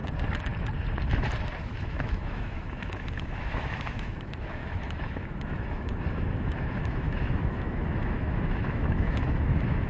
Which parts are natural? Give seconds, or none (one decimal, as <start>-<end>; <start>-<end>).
0.0-1.6